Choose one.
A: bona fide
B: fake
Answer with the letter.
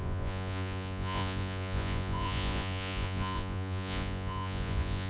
B